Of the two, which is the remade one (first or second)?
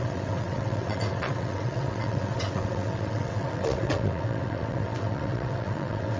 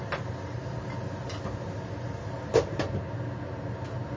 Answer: first